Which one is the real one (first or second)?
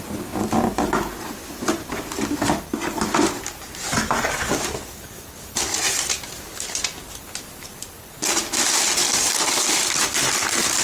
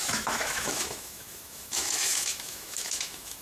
first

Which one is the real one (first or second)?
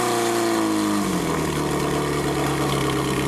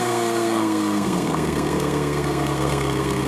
first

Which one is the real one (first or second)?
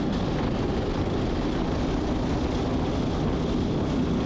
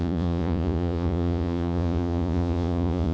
first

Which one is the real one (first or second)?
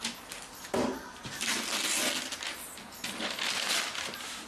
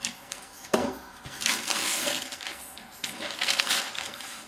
first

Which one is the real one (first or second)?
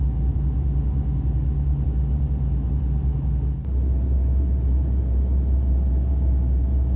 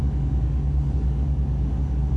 first